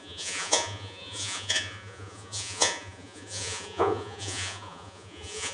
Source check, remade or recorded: remade